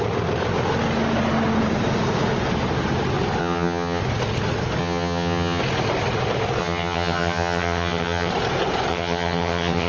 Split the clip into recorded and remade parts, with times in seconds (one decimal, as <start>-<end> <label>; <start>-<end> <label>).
0.0-3.4 recorded; 3.4-4.0 remade; 4.0-4.8 recorded; 4.8-5.6 remade; 5.6-6.6 recorded; 6.6-8.3 remade; 8.3-8.9 recorded; 8.9-9.9 remade

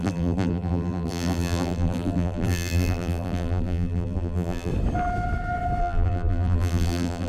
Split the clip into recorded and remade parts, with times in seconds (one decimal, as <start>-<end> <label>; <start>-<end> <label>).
0.0-4.7 remade; 4.7-5.8 recorded; 5.8-7.3 remade

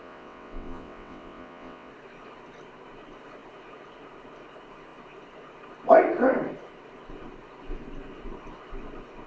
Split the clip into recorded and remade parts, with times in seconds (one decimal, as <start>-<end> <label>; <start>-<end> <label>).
0.0-1.9 remade; 1.9-9.3 recorded

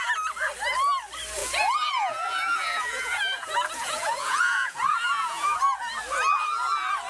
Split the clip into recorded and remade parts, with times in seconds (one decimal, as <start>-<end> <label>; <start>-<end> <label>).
0.0-1.4 recorded; 1.4-5.6 remade; 5.6-7.1 recorded

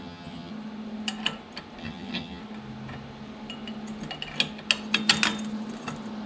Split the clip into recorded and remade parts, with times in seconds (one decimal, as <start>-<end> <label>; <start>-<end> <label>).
0.0-0.5 remade; 0.5-1.8 recorded; 1.8-2.4 remade; 2.4-6.3 recorded

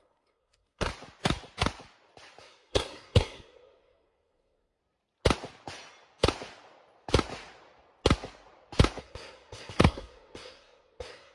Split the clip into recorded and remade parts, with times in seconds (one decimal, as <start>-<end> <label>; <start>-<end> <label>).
0.0-0.9 remade; 0.9-2.4 recorded; 2.4-4.8 remade; 4.8-9.0 recorded; 9.0-11.3 remade

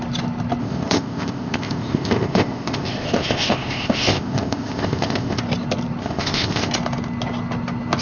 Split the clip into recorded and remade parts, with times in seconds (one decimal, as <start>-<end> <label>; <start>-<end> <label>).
0.0-0.6 recorded; 0.6-5.4 remade; 5.4-6.0 recorded; 6.0-6.7 remade; 6.7-8.0 recorded